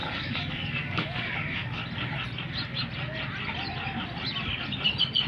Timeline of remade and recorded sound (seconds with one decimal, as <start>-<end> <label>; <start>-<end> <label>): 0.0-1.8 remade; 1.8-5.3 recorded